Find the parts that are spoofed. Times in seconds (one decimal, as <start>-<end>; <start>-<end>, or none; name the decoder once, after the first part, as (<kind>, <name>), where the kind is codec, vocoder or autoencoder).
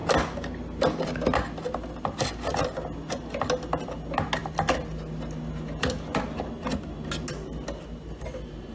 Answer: none